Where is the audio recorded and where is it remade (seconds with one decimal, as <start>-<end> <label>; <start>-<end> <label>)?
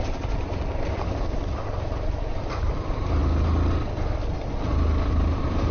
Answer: 0.0-3.2 remade; 3.2-5.1 recorded; 5.1-5.7 remade